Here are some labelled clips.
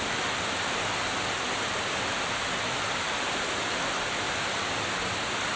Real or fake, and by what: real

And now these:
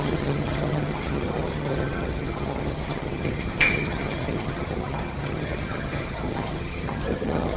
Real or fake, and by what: fake, vocoder, HiFi-GAN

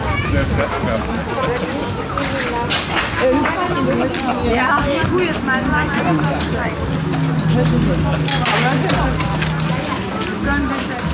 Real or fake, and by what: real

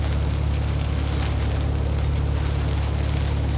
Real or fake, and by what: real